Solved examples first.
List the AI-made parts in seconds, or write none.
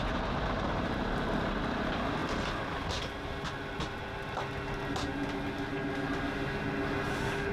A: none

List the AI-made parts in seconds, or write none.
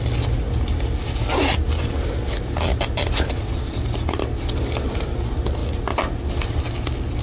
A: none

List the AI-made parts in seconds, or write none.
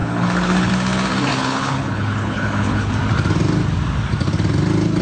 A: 0.0-0.7 (codec, HILCodec); 1.3-2.9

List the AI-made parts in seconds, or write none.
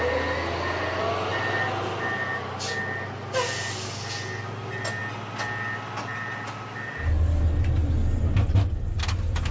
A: none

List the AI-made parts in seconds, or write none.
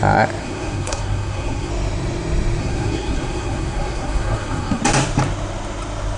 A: 0.4-1.7 (codec, SNAC); 2.6-4.8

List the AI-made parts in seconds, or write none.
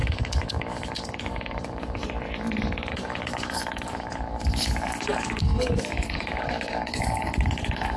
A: 0.0-2.0 (codec, DAC); 2.9-8.0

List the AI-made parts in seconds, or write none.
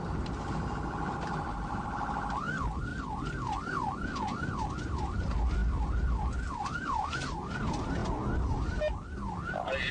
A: 0.0-8.0 (vocoder, BigVGAN v2)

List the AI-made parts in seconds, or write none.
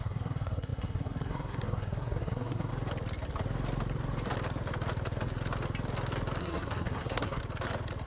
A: 0.0-2.7 (codec, SNAC); 6.4-7.4